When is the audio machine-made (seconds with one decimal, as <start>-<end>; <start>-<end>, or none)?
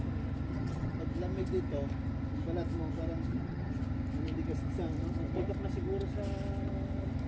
0.5-1.0; 3.3-3.8